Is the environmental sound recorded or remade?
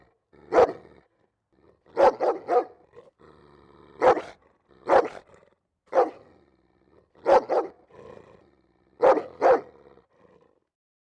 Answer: recorded